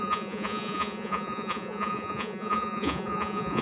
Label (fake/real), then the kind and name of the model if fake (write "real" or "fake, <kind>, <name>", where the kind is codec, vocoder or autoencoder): fake, vocoder, Vocos